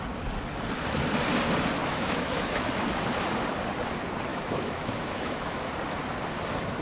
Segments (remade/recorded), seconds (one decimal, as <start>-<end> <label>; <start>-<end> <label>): 0.0-1.8 recorded; 1.8-2.7 remade; 2.7-4.3 recorded; 4.3-5.7 remade; 5.7-6.8 recorded